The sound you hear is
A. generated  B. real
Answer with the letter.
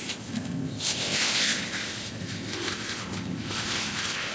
A